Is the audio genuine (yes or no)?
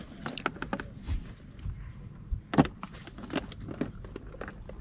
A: yes